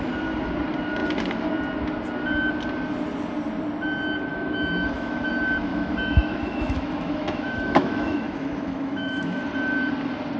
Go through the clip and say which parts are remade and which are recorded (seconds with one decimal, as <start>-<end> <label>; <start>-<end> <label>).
0.0-4.3 recorded; 4.3-5.3 remade; 5.3-5.7 recorded; 5.7-9.4 remade; 9.4-10.4 recorded